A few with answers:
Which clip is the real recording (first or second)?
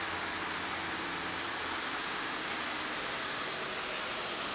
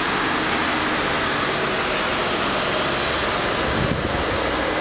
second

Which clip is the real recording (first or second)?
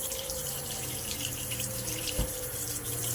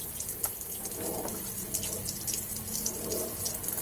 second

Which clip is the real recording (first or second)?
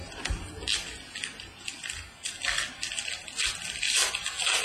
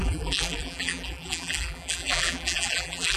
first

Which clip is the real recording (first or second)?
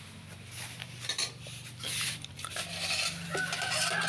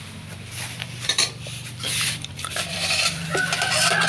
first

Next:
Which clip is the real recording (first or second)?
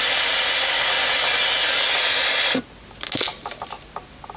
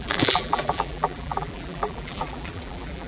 first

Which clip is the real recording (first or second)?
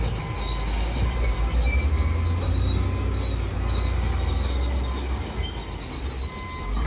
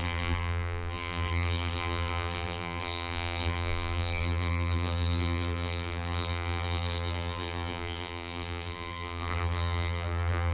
first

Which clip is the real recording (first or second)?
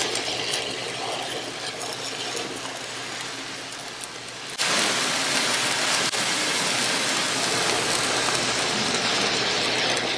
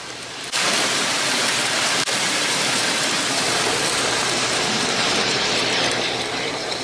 first